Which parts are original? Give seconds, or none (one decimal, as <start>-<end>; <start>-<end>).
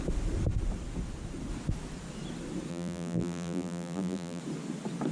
0.0-2.7; 4.4-5.1